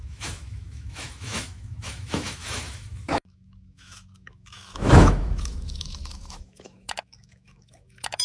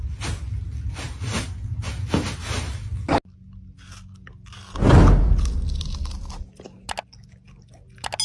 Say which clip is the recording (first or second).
second